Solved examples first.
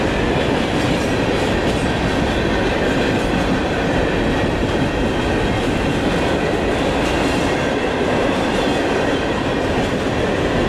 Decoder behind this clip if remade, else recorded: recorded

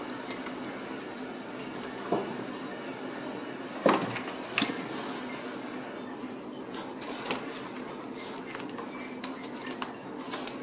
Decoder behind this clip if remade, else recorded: recorded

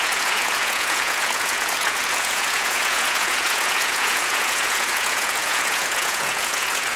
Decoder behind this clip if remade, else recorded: remade, vocoder, Vocos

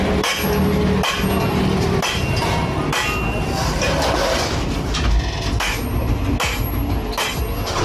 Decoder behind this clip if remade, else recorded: recorded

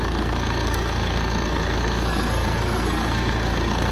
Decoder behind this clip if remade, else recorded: remade, codec, SNAC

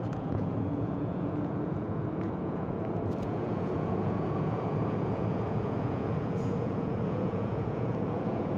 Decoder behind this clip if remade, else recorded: remade, vocoder, Vocos